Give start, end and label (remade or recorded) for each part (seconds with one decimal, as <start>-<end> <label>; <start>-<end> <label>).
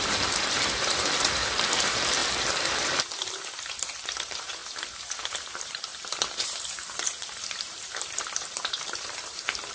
0.0-2.2 remade; 2.2-4.0 recorded; 4.0-9.7 remade